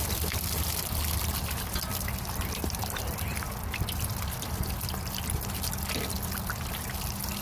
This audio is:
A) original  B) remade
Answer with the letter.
A